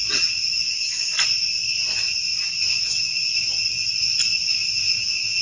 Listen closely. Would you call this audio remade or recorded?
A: recorded